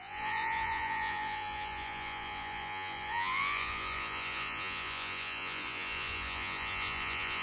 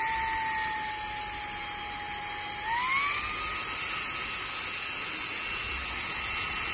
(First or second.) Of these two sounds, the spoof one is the first